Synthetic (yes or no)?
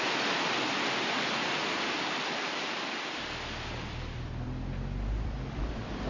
yes